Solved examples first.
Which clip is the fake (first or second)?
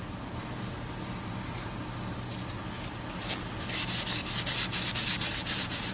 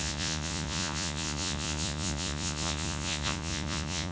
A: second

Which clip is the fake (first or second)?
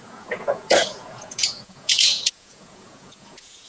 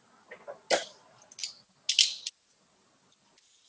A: first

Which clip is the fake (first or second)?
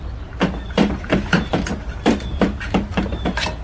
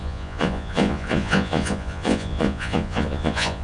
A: second